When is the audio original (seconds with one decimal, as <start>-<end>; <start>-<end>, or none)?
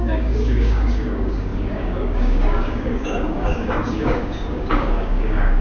none